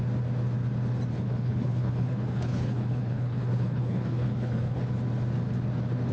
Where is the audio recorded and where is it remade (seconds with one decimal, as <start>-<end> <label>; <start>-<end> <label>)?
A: 0.0-1.1 recorded; 1.1-4.8 remade; 4.8-6.1 recorded